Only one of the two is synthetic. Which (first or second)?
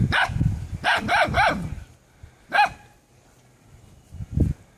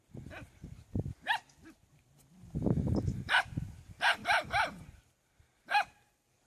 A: second